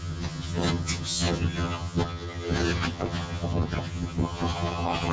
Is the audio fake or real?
fake